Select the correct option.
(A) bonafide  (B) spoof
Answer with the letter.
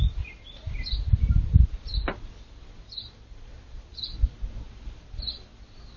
B